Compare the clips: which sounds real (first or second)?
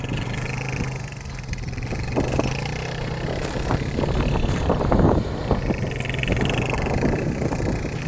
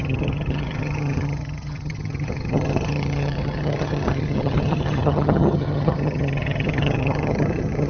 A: first